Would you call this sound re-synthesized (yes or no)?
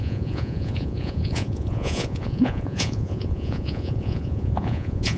yes